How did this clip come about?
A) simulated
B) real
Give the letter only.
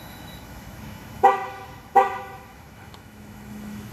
A